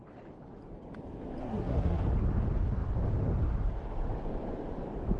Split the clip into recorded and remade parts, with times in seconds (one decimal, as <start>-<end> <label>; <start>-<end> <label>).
0.0-1.4 recorded; 1.4-2.0 remade; 2.0-5.2 recorded